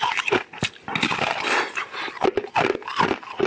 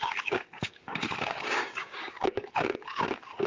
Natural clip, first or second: first